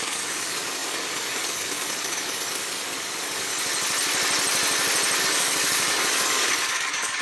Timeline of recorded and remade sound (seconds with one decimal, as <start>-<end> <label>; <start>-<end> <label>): 0.0-3.5 remade; 3.5-5.2 recorded; 5.2-7.2 remade